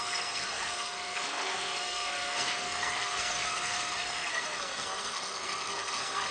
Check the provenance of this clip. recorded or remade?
remade